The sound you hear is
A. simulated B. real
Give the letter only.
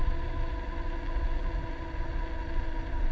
B